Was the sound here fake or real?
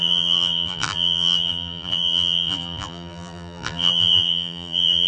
fake